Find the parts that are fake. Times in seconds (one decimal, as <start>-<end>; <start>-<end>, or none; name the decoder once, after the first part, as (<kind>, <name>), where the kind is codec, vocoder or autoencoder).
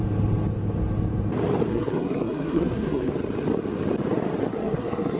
1.7-3.1 (codec, SNAC); 4.5-5.2